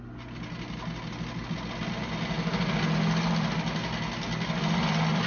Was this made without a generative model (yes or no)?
yes